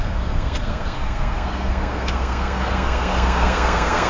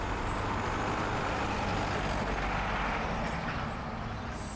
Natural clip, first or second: second